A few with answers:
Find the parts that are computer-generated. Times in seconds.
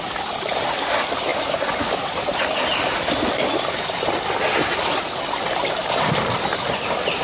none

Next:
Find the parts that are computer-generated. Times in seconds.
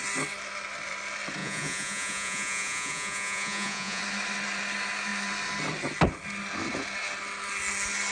1.4-4.0 (vocoder, Vocos)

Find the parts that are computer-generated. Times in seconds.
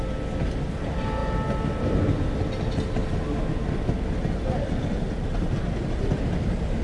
none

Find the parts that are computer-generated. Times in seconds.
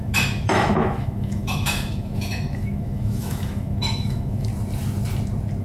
0.0-4.5 (autoencoder, DAC-VAE)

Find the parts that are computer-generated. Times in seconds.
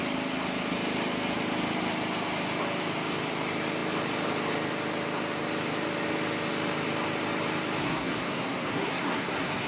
7.8-9.7 (codec, SNAC)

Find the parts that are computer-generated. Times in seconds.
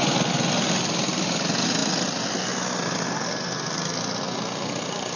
none